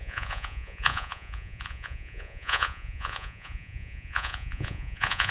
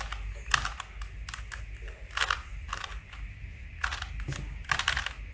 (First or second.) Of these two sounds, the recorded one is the second